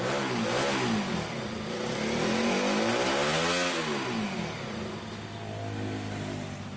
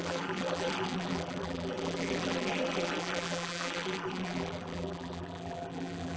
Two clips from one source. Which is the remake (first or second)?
second